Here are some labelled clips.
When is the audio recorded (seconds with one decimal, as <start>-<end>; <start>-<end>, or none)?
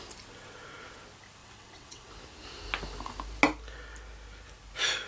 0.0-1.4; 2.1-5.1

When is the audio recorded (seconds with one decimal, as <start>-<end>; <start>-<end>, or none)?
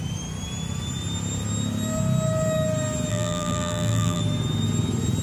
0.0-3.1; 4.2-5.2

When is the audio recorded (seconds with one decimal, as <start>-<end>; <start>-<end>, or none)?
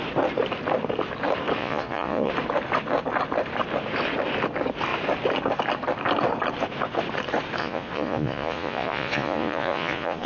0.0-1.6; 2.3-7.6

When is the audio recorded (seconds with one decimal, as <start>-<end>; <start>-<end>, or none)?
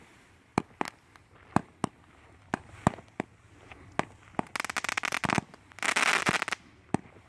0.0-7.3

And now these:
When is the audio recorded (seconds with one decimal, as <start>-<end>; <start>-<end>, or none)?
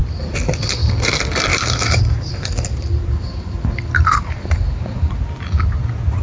0.0-1.5; 5.2-6.2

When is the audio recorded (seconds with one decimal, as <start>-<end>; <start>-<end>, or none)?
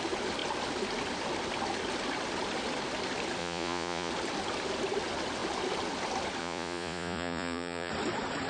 0.0-3.4; 4.1-6.4; 7.9-8.5